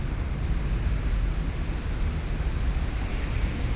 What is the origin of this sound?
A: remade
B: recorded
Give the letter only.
B